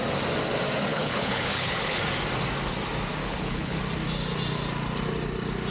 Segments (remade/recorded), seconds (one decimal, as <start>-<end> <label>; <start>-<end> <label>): 0.0-0.9 recorded; 0.9-2.0 remade; 2.0-3.2 recorded; 3.2-3.8 remade; 3.8-5.7 recorded